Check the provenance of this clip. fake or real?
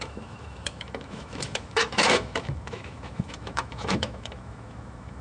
fake